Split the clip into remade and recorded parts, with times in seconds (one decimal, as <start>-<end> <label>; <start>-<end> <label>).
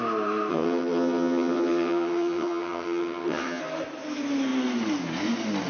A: 0.0-0.5 recorded; 0.5-3.6 remade; 3.6-5.7 recorded